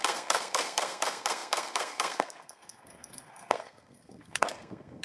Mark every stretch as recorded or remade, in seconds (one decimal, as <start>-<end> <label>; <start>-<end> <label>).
0.0-5.0 remade

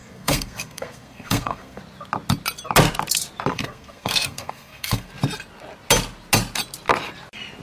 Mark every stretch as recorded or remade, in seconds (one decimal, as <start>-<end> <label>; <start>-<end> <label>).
0.0-1.8 remade; 1.8-3.5 recorded; 3.5-5.1 remade; 5.1-7.6 recorded

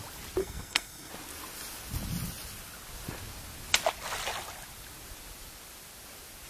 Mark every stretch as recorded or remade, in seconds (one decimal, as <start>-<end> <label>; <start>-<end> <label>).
0.0-0.4 recorded; 0.4-1.1 remade; 1.1-6.5 recorded

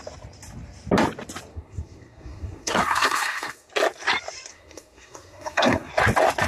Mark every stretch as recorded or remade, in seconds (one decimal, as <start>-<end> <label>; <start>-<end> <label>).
0.0-1.5 recorded; 1.5-3.7 remade; 3.7-4.5 recorded; 4.5-5.9 remade; 5.9-6.5 recorded

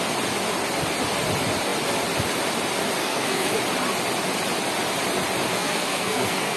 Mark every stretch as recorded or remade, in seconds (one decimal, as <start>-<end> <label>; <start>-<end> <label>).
0.0-3.0 recorded; 3.0-3.6 remade; 3.6-5.5 recorded; 5.5-6.6 remade

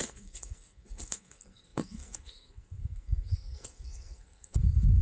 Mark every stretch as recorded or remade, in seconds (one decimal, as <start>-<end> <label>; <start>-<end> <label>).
0.0-5.0 remade

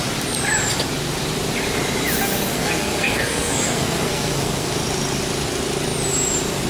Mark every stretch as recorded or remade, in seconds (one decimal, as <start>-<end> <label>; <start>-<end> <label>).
0.0-2.5 recorded; 2.5-4.7 remade; 4.7-6.7 recorded

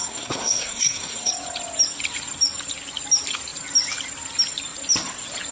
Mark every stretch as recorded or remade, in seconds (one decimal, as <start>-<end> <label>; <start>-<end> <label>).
0.0-1.3 remade; 1.3-5.5 recorded